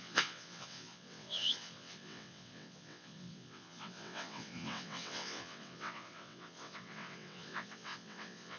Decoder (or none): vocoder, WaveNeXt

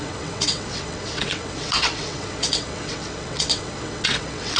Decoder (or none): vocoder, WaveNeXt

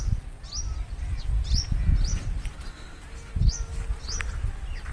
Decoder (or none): none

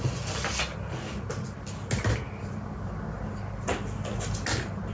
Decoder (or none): none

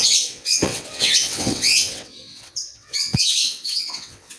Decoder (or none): vocoder, WaveNeXt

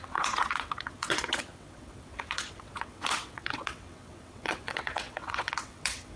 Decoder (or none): vocoder, WaveNeXt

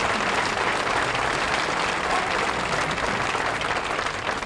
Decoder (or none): none